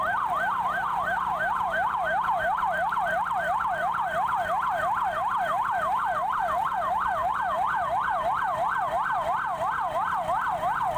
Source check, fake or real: fake